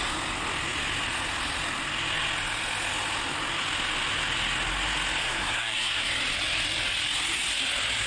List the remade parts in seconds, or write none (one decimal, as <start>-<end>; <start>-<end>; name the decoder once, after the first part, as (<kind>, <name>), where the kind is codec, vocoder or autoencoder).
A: 5.2-6.1 (codec, SNAC)